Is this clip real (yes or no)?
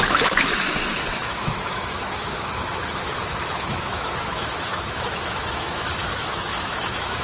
no